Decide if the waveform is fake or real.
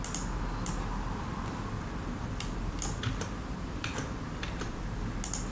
real